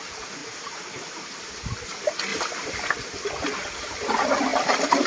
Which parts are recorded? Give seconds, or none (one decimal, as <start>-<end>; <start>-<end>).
0.0-0.4; 1.5-2.3; 2.9-5.1